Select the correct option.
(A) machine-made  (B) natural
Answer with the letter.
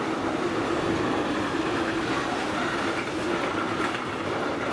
B